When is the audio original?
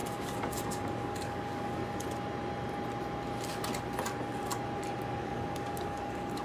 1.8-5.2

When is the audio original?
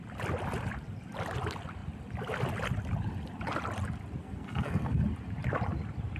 0.0-4.2; 5.0-6.2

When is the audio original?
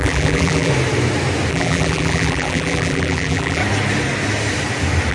0.7-1.5; 3.6-5.1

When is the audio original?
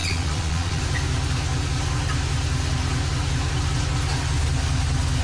0.8-5.2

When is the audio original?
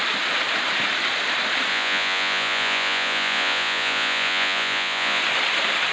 0.0-1.7; 5.2-5.9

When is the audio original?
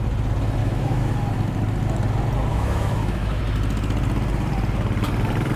0.0-0.6; 1.1-2.5; 3.4-5.6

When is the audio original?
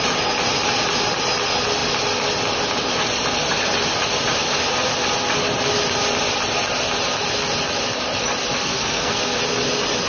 0.0-8.6; 9.4-10.1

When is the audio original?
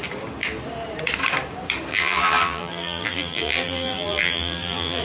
0.0-1.9